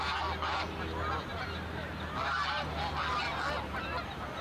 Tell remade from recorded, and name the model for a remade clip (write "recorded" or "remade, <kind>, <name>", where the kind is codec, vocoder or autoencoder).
recorded